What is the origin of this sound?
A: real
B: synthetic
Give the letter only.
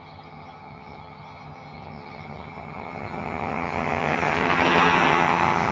B